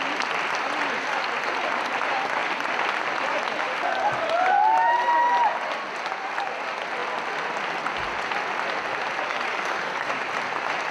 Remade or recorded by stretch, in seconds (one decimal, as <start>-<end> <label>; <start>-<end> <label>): 0.0-9.3 recorded; 9.3-10.1 remade; 10.1-10.9 recorded